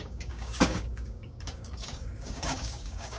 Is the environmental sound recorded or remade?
remade